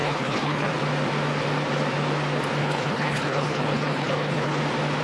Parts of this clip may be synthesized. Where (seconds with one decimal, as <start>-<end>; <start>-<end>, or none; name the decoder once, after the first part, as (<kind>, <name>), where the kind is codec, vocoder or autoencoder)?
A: 0.0-0.7 (codec, HILCodec); 2.6-4.6